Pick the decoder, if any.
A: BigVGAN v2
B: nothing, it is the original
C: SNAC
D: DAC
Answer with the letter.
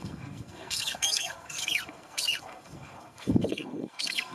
C